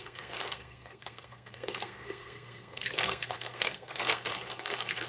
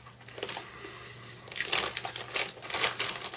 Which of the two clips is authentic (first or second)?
second